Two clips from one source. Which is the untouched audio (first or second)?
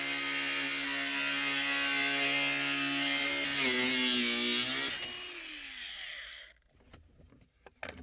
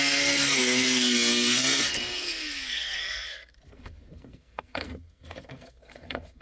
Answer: first